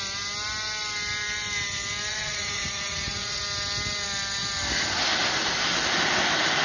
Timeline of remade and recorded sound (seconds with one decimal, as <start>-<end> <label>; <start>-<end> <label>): 0.0-2.1 recorded; 2.1-3.4 remade; 3.4-6.6 recorded